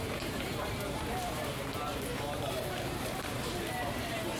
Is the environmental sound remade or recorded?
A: remade